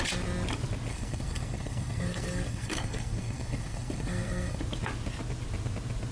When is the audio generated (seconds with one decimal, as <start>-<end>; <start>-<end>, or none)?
0.9-4.6